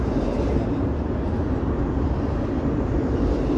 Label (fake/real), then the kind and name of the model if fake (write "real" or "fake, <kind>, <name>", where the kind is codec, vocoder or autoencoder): real